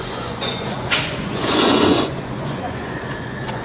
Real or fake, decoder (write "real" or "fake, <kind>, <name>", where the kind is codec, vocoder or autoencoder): fake, vocoder, Vocos